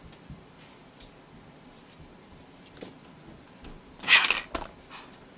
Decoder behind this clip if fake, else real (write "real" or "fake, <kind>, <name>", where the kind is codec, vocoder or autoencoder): real